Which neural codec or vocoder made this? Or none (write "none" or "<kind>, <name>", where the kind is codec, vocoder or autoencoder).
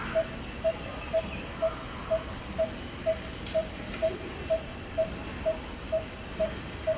none